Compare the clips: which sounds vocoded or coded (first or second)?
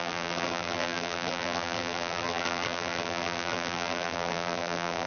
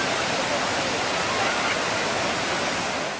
first